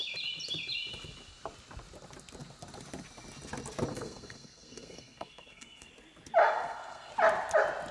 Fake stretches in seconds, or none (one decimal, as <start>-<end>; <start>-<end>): 3.9-5.9; 6.4-7.1